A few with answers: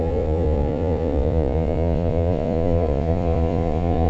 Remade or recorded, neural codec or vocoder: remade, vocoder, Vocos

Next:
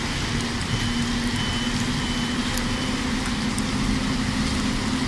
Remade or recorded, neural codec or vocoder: recorded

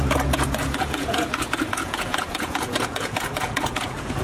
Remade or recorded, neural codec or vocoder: remade, vocoder, Vocos